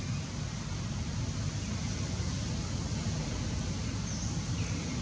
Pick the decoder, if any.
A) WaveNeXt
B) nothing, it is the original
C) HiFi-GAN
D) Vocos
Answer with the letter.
B